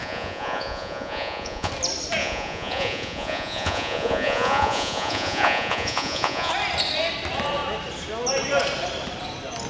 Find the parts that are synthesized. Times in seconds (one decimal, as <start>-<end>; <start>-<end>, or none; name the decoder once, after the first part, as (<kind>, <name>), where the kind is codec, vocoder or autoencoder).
0.0-1.7 (vocoder, Vocos); 2.2-6.5